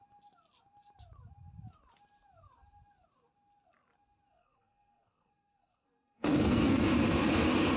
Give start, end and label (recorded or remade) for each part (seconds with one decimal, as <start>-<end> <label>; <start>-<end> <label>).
0.0-4.3 recorded; 4.3-6.8 remade; 6.8-7.8 recorded